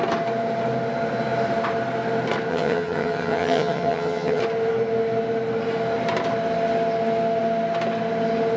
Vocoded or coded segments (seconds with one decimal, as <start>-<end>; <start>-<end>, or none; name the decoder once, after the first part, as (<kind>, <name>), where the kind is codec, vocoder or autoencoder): 2.5-4.4 (vocoder, HiFi-GAN)